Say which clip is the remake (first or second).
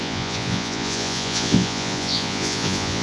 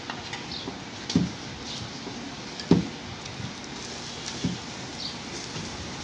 first